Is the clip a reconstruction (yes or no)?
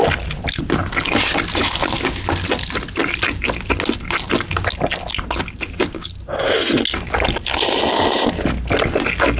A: no